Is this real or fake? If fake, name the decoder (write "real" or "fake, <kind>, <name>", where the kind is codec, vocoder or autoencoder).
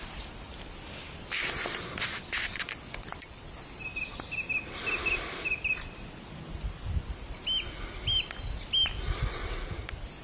real